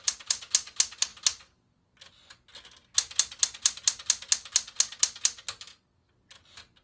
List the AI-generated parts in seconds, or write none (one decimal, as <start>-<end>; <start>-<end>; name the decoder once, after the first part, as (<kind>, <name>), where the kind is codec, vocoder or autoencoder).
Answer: none

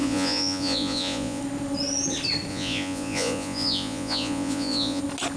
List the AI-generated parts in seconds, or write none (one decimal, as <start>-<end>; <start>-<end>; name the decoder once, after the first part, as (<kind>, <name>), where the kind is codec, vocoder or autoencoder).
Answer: 0.0-1.4 (vocoder, Vocos); 2.5-5.0

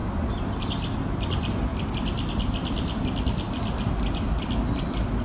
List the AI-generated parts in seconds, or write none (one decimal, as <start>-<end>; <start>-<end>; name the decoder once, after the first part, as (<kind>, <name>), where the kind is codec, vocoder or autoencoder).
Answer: none

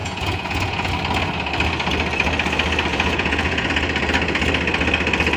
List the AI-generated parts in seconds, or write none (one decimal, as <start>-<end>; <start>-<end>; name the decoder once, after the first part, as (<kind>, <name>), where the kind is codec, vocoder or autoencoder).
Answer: 0.0-0.9 (vocoder, Vocos); 2.9-3.7

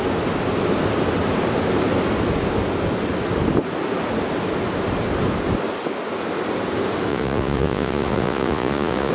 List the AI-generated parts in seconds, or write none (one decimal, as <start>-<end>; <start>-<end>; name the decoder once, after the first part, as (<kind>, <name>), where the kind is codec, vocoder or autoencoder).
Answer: 7.1-9.1 (vocoder, Vocos)

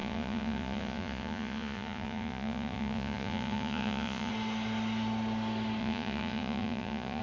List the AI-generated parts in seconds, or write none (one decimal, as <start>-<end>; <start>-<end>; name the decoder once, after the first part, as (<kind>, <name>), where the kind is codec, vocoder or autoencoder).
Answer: 0.0-4.3 (vocoder, Vocos); 5.8-7.2